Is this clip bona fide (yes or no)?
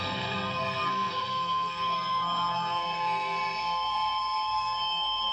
no